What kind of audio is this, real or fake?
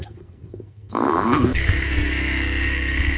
fake